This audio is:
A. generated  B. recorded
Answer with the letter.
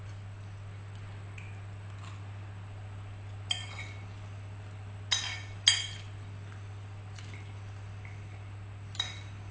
B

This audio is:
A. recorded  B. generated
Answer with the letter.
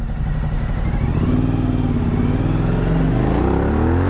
A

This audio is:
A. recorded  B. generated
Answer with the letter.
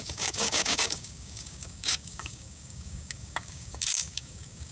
B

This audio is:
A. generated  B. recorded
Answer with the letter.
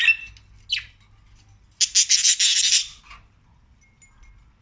B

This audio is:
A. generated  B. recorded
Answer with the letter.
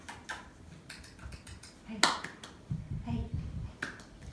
B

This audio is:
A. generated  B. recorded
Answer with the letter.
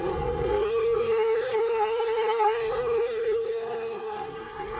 A